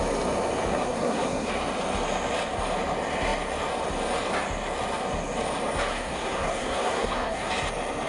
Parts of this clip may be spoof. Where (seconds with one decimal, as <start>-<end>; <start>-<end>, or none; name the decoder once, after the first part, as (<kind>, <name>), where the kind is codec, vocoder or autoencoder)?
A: 0.7-1.5 (codec, SNAC); 5.9-7.5